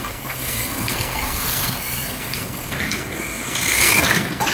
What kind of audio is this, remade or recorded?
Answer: remade